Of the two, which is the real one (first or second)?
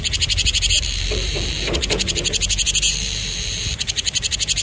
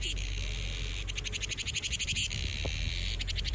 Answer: second